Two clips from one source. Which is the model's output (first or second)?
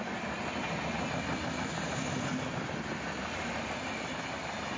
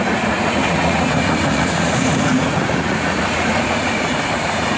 second